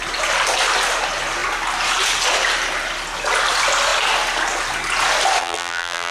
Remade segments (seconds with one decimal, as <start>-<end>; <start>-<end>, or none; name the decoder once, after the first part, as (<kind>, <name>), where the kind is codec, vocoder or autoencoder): 5.4-6.1 (vocoder, BigVGAN v2)